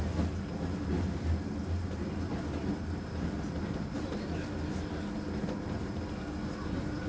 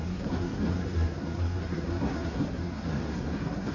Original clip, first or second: first